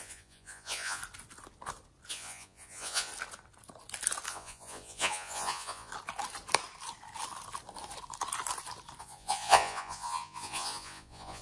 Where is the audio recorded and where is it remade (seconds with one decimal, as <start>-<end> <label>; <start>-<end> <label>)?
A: 0.0-1.0 remade; 1.0-2.1 recorded; 2.1-3.1 remade; 3.1-4.3 recorded; 4.3-5.9 remade; 5.9-9.0 recorded; 9.0-11.4 remade